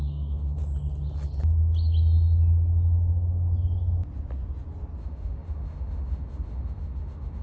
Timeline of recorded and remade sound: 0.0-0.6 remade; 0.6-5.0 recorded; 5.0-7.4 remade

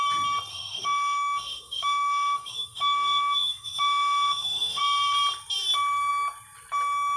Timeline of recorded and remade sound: 0.0-0.5 recorded; 0.5-4.8 remade; 4.8-7.2 recorded

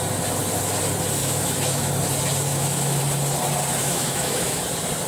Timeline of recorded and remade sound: 0.0-1.2 recorded; 1.2-1.9 remade; 1.9-2.5 recorded; 2.5-3.0 remade; 3.0-3.7 recorded; 3.7-4.6 remade; 4.6-5.1 recorded

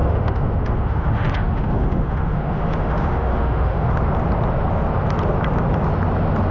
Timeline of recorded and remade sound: 0.0-3.9 remade; 3.9-6.5 recorded

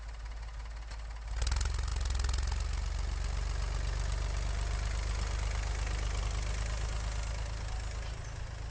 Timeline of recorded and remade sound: 0.0-8.7 recorded

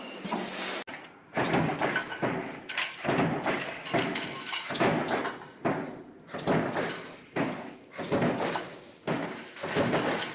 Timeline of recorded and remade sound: 0.0-4.1 recorded; 4.1-4.9 remade; 4.9-10.3 recorded